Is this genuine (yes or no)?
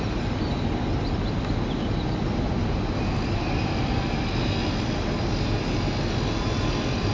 yes